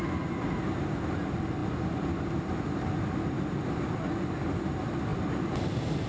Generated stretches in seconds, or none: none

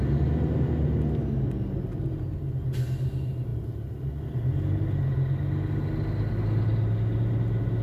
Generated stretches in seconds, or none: none

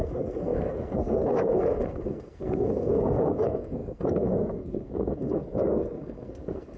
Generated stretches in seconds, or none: 0.0-6.8